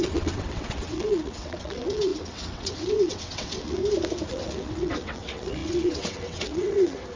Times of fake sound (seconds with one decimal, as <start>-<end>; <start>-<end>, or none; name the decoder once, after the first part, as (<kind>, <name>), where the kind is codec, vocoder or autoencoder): 0.0-3.8 (vocoder, WaveNeXt); 4.3-7.2